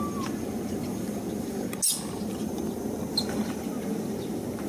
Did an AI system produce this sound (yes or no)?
no